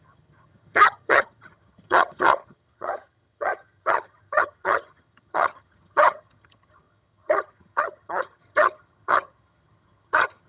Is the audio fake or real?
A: fake